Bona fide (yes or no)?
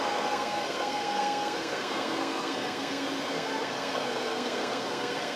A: no